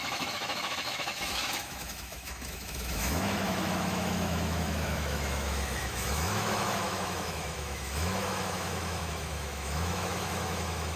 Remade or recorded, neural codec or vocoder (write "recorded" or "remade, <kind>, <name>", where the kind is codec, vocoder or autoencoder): remade, autoencoder, DAC-VAE